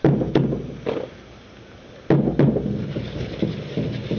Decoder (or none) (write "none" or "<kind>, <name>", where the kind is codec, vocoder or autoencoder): none